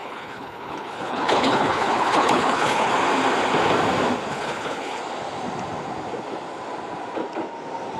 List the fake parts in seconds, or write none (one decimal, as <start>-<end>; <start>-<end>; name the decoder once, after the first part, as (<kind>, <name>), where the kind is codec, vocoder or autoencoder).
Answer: 0.0-2.9 (codec, HILCodec); 4.3-5.0